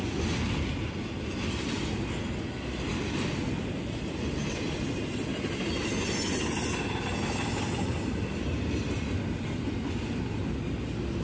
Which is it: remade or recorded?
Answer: recorded